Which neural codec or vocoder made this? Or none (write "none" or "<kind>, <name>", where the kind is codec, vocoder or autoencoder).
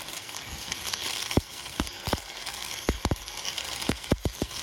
codec, SNAC